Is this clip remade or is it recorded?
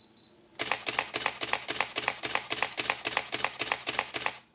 recorded